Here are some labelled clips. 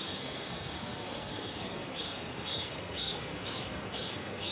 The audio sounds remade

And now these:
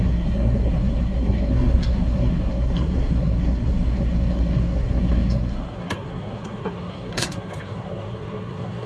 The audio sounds remade